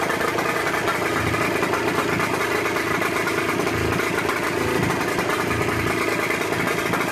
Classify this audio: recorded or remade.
recorded